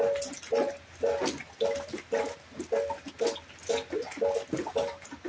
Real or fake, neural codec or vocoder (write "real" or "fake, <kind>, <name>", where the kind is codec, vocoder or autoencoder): real